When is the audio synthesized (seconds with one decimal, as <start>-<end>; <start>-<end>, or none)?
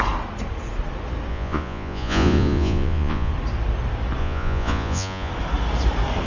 1.3-3.3; 4.2-5.3